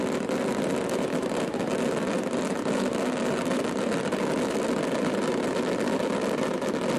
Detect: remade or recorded recorded